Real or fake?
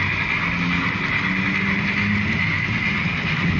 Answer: real